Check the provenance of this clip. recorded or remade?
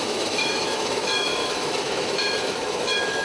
remade